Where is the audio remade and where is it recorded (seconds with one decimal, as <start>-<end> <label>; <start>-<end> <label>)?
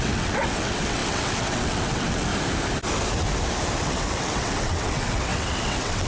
0.0-2.3 remade; 2.3-3.8 recorded; 3.8-6.1 remade